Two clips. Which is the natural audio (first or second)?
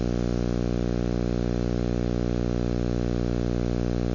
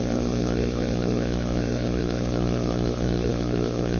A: first